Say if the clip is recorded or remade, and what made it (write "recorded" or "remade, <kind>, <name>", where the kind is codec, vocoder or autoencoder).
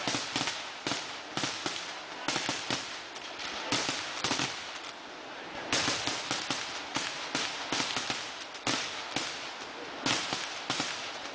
recorded